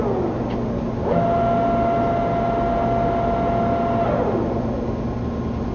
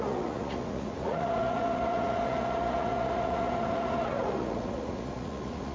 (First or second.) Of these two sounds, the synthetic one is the second